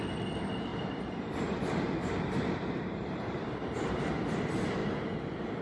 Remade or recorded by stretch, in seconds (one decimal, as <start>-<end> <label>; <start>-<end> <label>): 0.0-0.7 recorded; 0.7-4.1 remade; 4.1-5.6 recorded